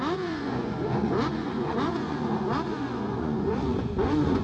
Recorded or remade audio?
remade